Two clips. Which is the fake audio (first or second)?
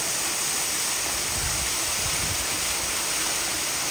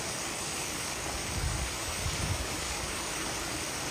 second